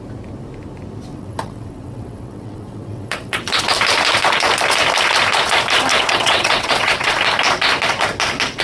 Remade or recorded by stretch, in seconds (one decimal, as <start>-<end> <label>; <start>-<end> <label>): 0.0-1.1 recorded; 1.1-3.6 remade; 3.6-5.9 recorded; 5.9-7.1 remade; 7.1-8.6 recorded